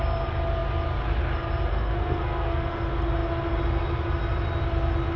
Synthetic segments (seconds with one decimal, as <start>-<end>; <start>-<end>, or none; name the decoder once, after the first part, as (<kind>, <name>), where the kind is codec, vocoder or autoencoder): 1.7-2.7 (codec, SNAC)